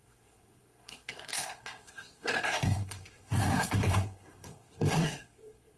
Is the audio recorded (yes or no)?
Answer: no